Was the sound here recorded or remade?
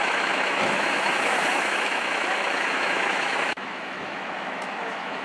remade